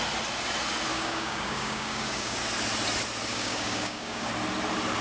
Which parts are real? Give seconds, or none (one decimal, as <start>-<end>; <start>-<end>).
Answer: 0.0-0.9; 2.4-3.3; 4.3-5.0